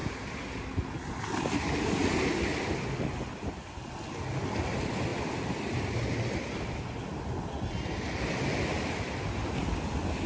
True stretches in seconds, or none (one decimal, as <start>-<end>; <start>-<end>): 0.0-2.5; 3.2-10.3